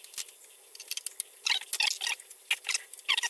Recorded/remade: recorded